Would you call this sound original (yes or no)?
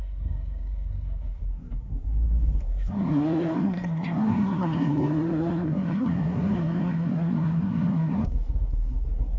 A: no